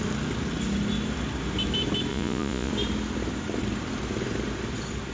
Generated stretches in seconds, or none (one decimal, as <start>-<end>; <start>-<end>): 2.1-2.7

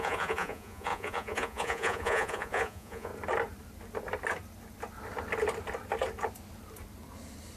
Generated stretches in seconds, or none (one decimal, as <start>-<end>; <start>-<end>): 0.0-3.1

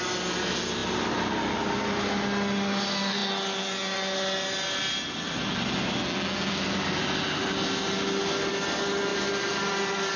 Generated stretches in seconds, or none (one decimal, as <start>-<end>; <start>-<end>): none

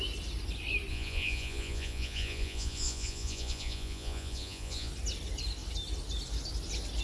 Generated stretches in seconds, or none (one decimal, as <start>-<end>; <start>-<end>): 0.9-4.9